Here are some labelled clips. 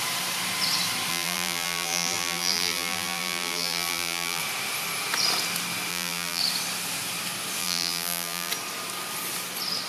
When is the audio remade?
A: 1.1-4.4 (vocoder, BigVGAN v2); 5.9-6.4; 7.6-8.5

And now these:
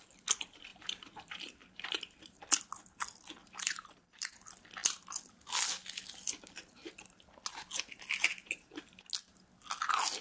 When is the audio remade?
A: 0.7-2.4 (vocoder, BigVGAN v2); 3.4-4.3

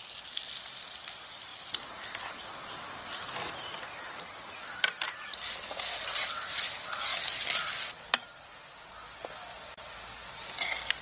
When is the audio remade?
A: none

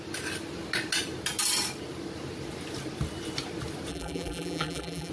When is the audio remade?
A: 3.9-5.1 (vocoder, BigVGAN v2)

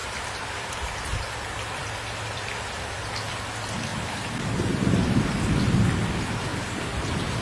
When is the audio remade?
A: 0.0-2.6 (vocoder, BigVGAN v2); 3.9-5.2; 6.5-7.4

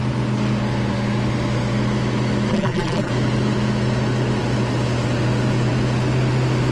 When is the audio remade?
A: 2.5-3.1 (vocoder, BigVGAN v2)

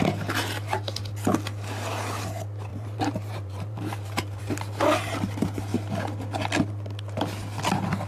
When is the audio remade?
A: 2.7-4.4 (vocoder, BigVGAN v2)

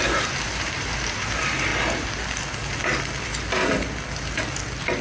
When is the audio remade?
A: 0.0-1.7 (vocoder, BigVGAN v2)